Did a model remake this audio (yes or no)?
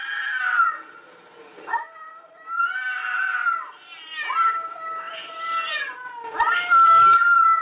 no